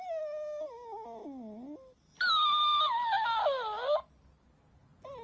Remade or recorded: recorded